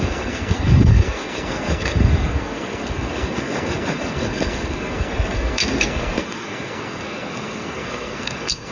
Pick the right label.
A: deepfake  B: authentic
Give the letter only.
A